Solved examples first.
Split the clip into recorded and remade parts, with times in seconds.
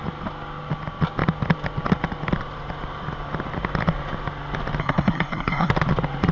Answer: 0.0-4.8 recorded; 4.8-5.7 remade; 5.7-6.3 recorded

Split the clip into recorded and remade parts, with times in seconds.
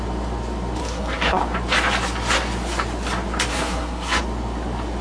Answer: 0.0-0.8 recorded; 0.8-1.4 remade; 1.4-3.5 recorded; 3.5-4.2 remade; 4.2-5.0 recorded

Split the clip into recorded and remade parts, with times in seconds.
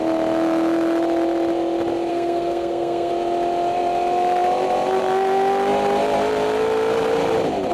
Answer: 0.0-2.1 recorded; 2.1-3.1 remade; 3.1-7.7 recorded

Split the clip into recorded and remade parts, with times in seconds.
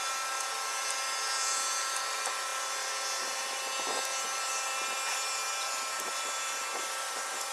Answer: 0.0-7.5 recorded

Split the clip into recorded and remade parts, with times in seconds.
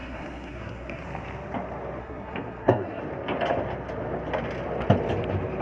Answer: 0.0-1.0 remade; 1.0-2.0 recorded; 2.0-3.0 remade; 3.0-5.6 recorded